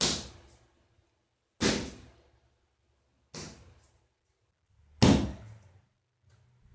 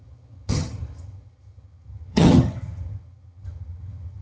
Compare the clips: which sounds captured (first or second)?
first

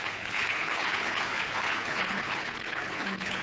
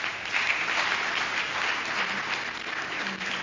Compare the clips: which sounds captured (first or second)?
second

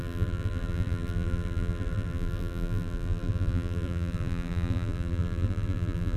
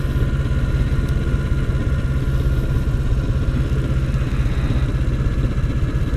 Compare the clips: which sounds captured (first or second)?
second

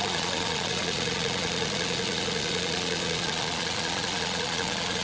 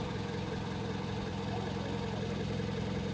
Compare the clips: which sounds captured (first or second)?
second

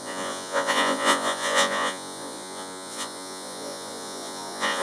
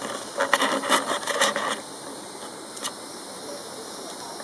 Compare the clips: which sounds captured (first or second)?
second